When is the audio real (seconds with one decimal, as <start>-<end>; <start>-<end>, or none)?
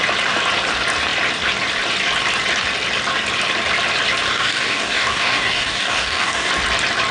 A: 0.0-4.3; 6.5-7.1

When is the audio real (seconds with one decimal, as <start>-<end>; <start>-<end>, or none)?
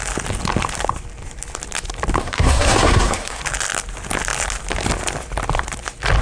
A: 0.0-2.2; 3.4-6.2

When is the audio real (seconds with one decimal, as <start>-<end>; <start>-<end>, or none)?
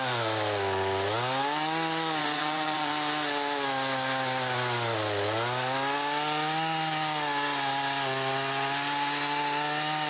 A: 0.0-2.2; 2.9-10.1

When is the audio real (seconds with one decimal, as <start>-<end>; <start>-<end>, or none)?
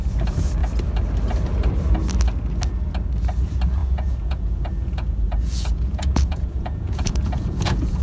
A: 0.0-3.8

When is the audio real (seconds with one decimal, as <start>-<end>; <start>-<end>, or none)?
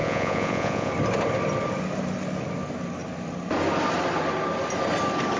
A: 0.9-5.4